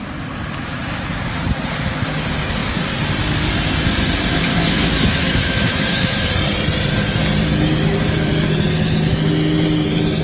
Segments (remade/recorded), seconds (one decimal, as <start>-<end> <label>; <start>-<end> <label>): 0.0-4.5 recorded; 4.5-6.3 remade; 6.3-10.2 recorded